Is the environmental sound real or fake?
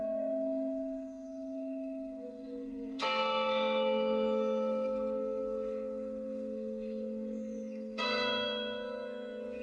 fake